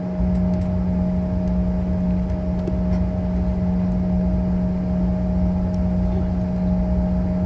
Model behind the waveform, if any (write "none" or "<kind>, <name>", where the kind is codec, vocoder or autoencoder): none